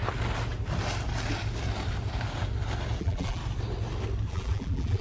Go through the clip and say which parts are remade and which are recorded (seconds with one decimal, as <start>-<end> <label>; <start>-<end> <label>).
0.0-3.0 recorded; 3.0-3.4 remade; 3.4-4.3 recorded; 4.3-5.0 remade